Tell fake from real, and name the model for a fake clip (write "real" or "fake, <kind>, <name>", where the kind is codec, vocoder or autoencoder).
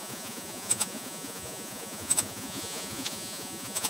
fake, vocoder, Vocos